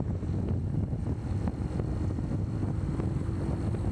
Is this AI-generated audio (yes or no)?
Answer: no